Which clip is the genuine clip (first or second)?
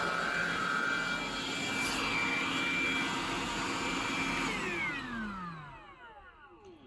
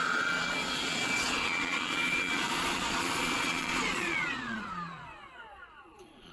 first